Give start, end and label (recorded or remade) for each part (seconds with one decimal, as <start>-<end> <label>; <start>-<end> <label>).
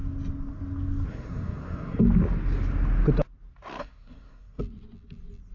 0.0-1.1 recorded; 1.1-2.0 remade; 2.0-3.8 recorded; 3.8-4.6 remade; 4.6-5.5 recorded